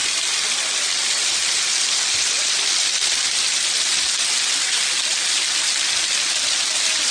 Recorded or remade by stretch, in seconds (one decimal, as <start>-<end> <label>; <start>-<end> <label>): 0.0-7.1 recorded